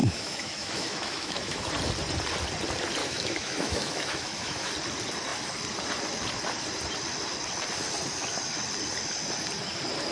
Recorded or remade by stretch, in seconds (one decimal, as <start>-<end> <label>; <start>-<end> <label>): 0.0-1.7 remade; 1.7-3.0 recorded; 3.0-4.7 remade; 4.7-10.1 recorded